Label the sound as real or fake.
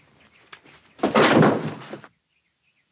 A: real